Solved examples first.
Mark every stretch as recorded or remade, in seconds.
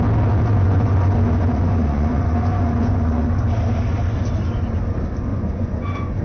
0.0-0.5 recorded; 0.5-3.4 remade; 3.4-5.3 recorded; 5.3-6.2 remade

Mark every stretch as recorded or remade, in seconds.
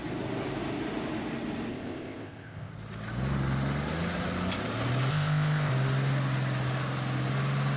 0.0-1.7 recorded; 1.7-2.7 remade; 2.7-5.1 recorded; 5.1-5.7 remade; 5.7-7.8 recorded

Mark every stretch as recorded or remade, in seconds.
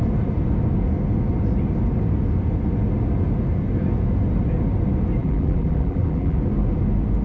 0.0-5.2 recorded; 5.2-6.4 remade; 6.4-7.2 recorded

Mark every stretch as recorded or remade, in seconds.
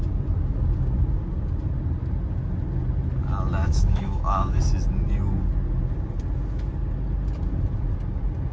0.0-3.6 recorded; 3.6-4.6 remade; 4.6-8.5 recorded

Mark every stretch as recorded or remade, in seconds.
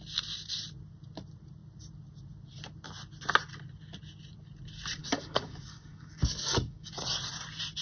0.0-5.0 recorded; 5.0-6.9 remade; 6.9-7.8 recorded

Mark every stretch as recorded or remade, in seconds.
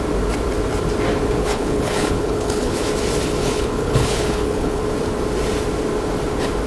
0.0-1.4 recorded; 1.4-2.9 remade; 2.9-3.4 recorded; 3.4-4.8 remade; 4.8-6.7 recorded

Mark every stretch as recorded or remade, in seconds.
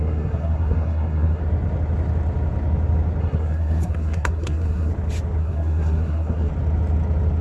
0.0-1.4 remade; 1.4-3.2 recorded; 3.2-4.9 remade; 4.9-5.4 recorded; 5.4-6.5 remade; 6.5-7.4 recorded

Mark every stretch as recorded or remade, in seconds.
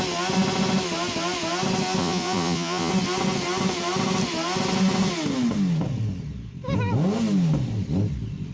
0.0-2.0 recorded; 2.0-2.9 remade; 2.9-8.5 recorded